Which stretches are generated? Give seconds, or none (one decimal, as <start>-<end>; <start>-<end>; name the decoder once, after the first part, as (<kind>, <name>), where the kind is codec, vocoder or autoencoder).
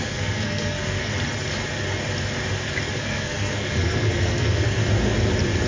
0.0-1.1 (codec, SNAC); 2.9-4.8